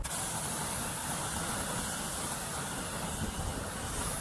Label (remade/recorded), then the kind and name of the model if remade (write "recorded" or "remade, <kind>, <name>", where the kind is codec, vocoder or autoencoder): recorded